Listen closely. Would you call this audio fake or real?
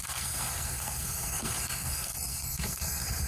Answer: fake